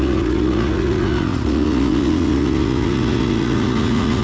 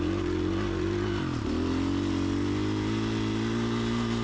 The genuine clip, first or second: second